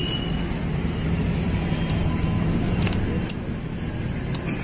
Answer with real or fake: real